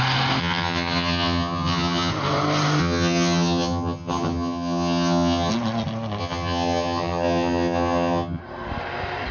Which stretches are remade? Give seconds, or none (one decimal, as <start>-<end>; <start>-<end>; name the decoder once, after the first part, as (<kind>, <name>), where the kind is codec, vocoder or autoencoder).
0.4-2.1 (vocoder, HiFi-GAN); 2.8-5.5; 6.2-8.4